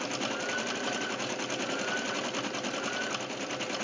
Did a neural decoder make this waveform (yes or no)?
no